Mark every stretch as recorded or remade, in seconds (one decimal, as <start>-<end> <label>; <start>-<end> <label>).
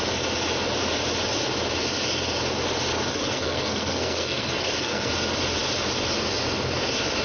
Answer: 0.0-3.1 recorded; 3.1-5.1 remade; 5.1-7.2 recorded